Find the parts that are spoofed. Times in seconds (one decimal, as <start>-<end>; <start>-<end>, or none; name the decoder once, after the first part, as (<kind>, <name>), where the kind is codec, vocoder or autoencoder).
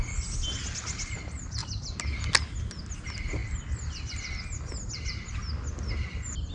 none